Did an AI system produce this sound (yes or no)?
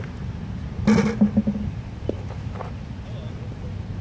no